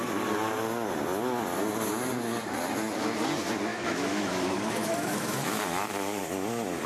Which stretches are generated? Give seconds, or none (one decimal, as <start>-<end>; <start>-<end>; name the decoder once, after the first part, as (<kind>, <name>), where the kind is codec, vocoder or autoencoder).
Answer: 3.7-6.2 (autoencoder, DAC-VAE)

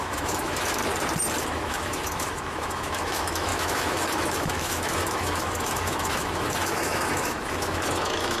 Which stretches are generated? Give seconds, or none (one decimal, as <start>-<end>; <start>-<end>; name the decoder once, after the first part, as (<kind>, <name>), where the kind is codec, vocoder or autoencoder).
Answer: 0.0-0.8 (autoencoder, DAC-VAE); 1.4-8.4

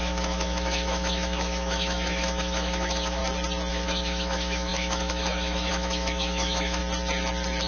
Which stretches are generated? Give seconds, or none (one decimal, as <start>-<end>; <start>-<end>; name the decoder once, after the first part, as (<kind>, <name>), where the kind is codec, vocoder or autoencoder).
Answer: 0.0-3.2 (autoencoder, DAC-VAE); 3.7-6.8

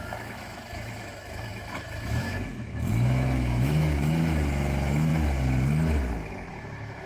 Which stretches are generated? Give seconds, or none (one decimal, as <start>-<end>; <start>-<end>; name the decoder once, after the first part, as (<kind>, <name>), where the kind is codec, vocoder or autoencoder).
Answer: 0.0-5.1 (autoencoder, DAC-VAE); 6.5-7.1

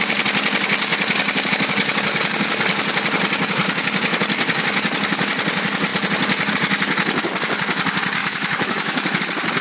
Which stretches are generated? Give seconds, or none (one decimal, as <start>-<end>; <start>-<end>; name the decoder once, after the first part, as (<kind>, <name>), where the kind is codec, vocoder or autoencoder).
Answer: 8.2-9.2 (autoencoder, DAC-VAE)

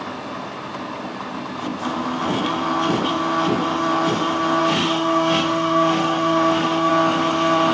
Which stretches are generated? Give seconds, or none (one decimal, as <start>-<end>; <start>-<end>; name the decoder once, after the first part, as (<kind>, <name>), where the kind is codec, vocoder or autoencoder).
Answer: 4.6-6.9 (autoencoder, DAC-VAE)

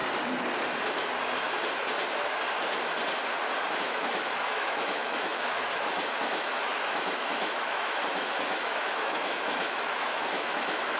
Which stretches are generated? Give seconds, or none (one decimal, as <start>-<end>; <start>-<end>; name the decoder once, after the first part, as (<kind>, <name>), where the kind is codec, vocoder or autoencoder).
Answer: 3.8-11.0 (autoencoder, DAC-VAE)

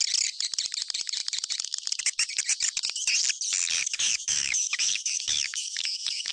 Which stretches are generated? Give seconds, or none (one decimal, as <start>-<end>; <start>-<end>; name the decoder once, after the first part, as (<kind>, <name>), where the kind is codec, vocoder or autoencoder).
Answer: 3.8-6.3 (autoencoder, DAC-VAE)